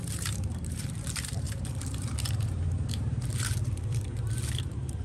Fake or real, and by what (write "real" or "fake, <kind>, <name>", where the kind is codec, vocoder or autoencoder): fake, vocoder, BigVGAN v2